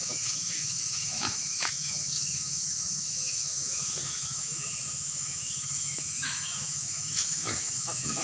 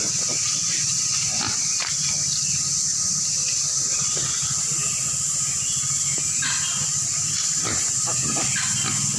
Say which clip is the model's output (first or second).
first